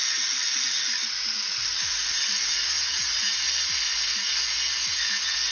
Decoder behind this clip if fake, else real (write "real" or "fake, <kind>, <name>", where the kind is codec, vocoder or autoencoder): real